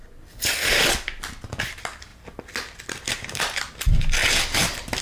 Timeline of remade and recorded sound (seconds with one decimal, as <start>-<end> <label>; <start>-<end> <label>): 0.0-5.0 recorded